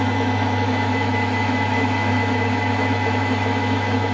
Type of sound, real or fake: fake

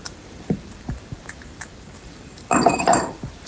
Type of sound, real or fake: fake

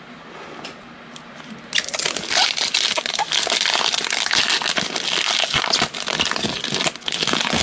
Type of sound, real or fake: real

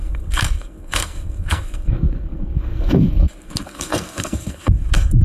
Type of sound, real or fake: fake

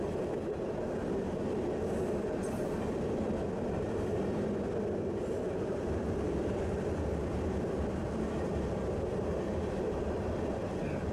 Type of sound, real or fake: fake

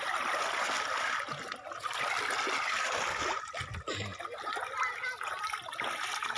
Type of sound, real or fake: real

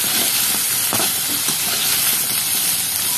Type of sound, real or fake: real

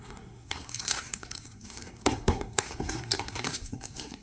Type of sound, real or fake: fake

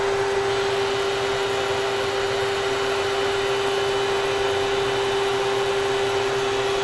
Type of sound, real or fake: real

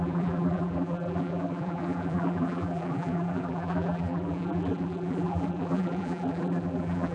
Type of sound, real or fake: fake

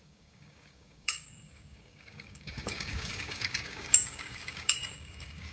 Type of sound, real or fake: fake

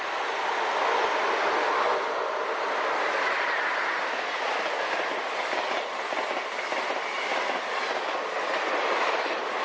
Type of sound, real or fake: real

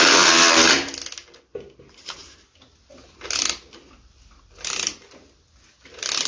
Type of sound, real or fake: real